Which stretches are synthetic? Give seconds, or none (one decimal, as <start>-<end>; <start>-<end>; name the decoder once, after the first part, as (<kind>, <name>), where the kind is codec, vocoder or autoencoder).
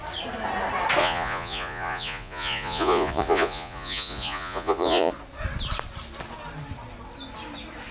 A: 1.0-5.1 (vocoder, Vocos)